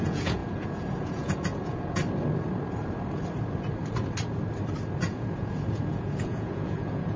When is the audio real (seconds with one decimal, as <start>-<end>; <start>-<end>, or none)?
2.0-5.0